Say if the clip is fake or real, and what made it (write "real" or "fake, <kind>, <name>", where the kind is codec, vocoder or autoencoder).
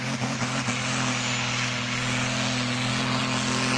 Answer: real